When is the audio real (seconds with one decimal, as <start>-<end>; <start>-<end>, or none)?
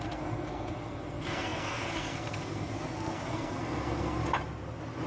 4.2-5.1